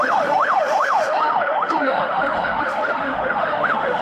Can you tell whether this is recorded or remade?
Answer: remade